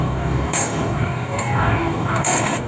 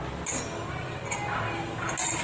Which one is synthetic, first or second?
first